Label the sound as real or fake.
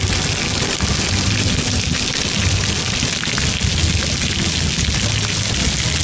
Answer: real